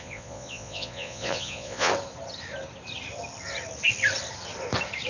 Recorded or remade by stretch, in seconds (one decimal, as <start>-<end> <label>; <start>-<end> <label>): 0.0-1.9 remade; 1.9-5.1 recorded